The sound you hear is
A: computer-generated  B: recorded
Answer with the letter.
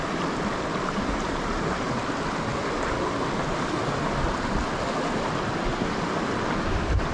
B